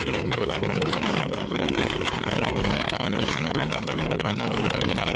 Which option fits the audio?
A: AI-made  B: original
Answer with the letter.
A